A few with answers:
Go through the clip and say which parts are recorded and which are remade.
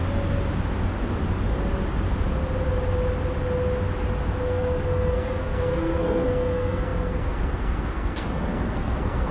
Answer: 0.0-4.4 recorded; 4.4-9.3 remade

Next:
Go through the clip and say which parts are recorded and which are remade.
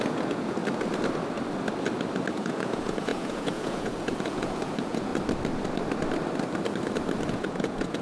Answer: 0.0-0.6 remade; 0.6-2.3 recorded; 2.3-5.1 remade; 5.1-7.3 recorded; 7.3-8.0 remade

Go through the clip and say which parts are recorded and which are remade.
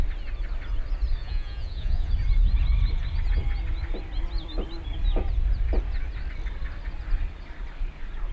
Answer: 0.0-1.2 recorded; 1.2-2.1 remade; 2.1-8.3 recorded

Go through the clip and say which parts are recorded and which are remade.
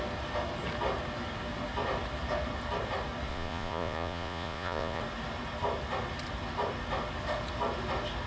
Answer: 0.0-3.3 recorded; 3.3-5.0 remade; 5.0-8.3 recorded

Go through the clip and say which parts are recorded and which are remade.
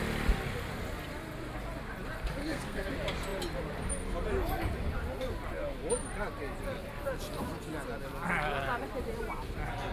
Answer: 0.0-2.4 recorded; 2.4-2.9 remade; 2.9-9.9 recorded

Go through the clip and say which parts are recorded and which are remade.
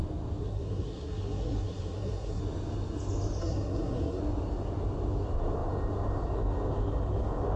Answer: 0.0-0.4 recorded; 0.4-2.4 remade; 2.4-3.4 recorded; 3.4-4.2 remade; 4.2-7.6 recorded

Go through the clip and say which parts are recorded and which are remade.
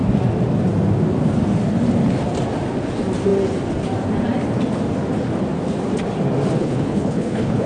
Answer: 0.0-6.6 recorded; 6.6-7.7 remade